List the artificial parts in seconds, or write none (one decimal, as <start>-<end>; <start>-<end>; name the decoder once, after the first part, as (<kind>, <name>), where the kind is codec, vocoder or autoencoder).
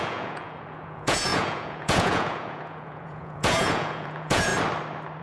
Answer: 0.0-4.5 (vocoder, Vocos)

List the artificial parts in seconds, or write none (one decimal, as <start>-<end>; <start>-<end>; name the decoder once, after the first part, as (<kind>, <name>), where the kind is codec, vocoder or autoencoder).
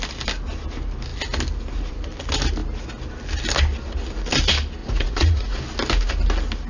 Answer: 4.8-5.6 (vocoder, Vocos)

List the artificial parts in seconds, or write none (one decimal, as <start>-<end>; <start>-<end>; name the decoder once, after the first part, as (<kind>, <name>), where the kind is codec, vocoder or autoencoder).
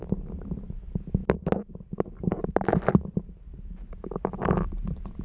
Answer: none